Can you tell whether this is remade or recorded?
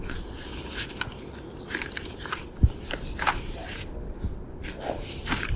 recorded